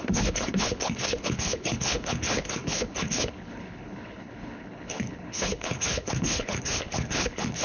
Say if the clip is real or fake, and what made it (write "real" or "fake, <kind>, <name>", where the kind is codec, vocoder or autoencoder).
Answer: fake, codec, HILCodec